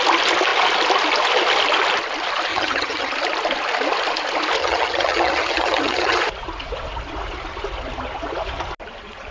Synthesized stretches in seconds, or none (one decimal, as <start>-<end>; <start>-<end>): 2.5-3.1; 4.6-6.2